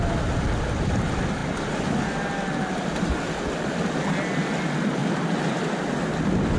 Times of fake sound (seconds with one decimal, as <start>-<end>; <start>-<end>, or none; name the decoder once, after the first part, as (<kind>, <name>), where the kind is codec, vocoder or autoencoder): none